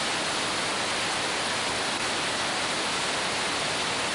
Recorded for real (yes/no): yes